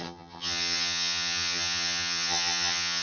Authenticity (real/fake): fake